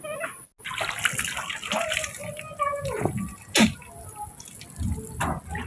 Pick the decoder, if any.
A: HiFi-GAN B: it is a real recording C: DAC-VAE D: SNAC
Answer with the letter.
B